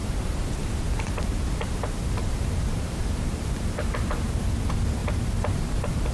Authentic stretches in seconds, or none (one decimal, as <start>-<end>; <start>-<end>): 3.5-5.0